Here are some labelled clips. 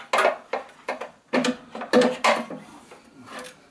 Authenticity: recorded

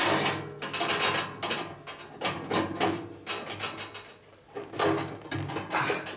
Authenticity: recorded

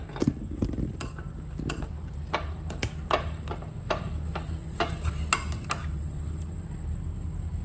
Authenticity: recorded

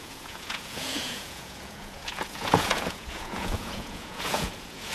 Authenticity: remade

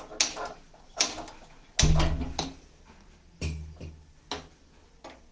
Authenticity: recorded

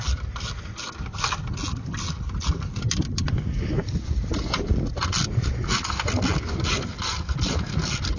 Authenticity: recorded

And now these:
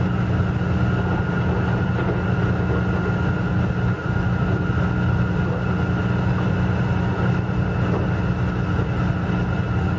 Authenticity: recorded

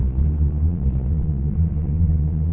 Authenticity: remade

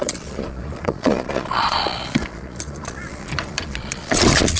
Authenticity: remade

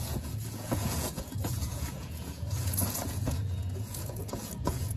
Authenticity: remade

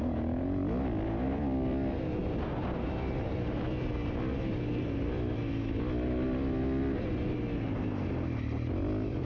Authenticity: recorded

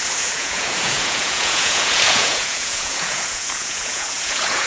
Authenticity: remade